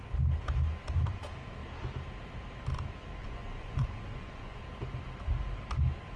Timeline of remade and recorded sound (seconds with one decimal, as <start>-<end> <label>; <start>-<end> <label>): 0.0-3.2 recorded; 3.2-4.6 remade; 4.6-6.2 recorded